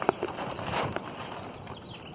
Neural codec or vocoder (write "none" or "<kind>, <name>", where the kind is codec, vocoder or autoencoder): none